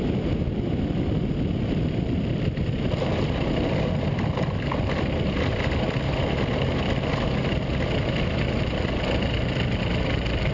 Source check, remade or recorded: recorded